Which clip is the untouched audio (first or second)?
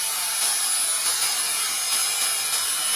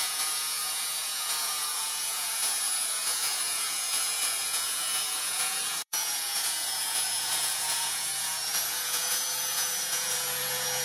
first